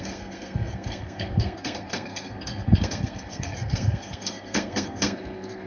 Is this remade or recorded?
remade